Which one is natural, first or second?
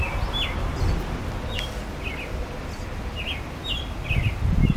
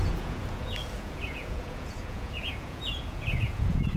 first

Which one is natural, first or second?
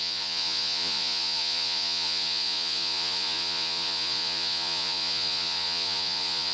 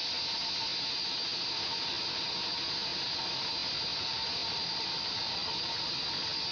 second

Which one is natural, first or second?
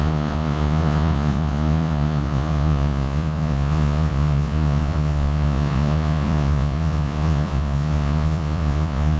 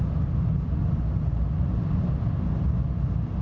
second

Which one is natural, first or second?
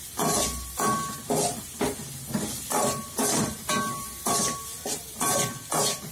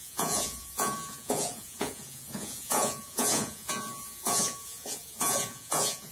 first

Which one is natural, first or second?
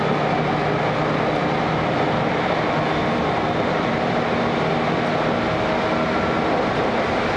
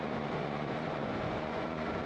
first